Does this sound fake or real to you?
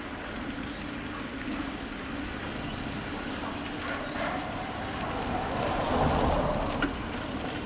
real